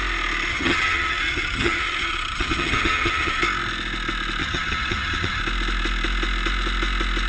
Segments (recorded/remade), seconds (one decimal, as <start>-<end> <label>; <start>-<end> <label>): 0.0-0.5 recorded; 0.5-3.4 remade; 3.4-4.4 recorded; 4.4-5.4 remade; 5.4-7.3 recorded